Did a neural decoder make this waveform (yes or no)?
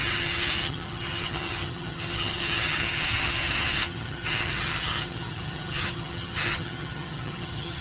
yes